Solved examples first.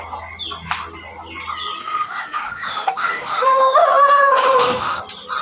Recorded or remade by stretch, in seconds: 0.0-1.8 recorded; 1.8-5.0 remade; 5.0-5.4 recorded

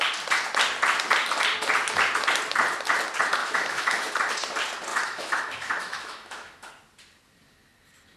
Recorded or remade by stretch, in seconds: 0.0-3.4 recorded; 3.4-4.1 remade; 4.1-4.9 recorded; 4.9-6.7 remade; 6.7-8.2 recorded

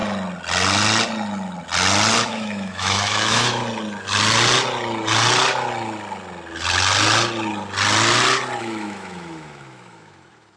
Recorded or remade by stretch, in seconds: 0.0-2.3 recorded; 2.3-3.6 remade; 3.6-8.6 recorded; 8.6-10.6 remade

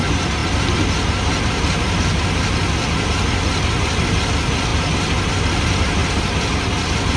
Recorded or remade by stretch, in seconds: 0.0-7.2 recorded

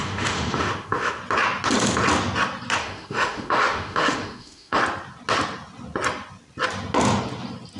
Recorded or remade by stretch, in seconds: 0.0-1.2 remade; 1.2-2.8 recorded; 2.8-4.8 remade; 4.8-7.8 recorded